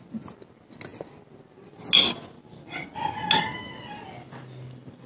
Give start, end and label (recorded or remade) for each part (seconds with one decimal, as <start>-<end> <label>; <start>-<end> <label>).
0.0-5.1 recorded